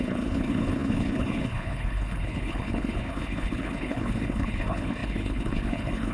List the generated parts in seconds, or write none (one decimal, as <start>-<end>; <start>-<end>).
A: 0.0-6.1